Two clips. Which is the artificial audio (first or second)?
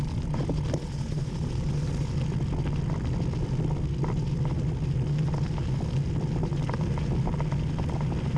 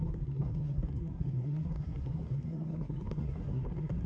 second